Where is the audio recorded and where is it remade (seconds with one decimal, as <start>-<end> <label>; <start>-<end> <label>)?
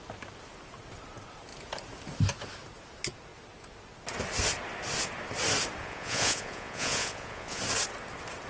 0.0-5.8 recorded; 5.8-7.6 remade; 7.6-8.5 recorded